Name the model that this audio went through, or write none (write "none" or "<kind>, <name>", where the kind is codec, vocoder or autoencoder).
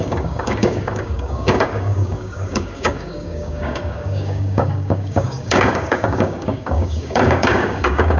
codec, DAC